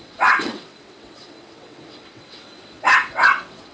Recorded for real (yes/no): no